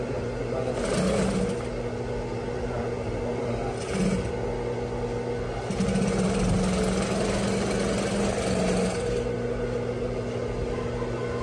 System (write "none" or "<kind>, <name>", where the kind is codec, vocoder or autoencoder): none